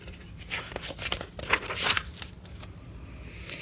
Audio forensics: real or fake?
real